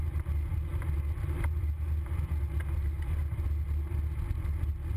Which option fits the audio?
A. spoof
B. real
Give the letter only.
B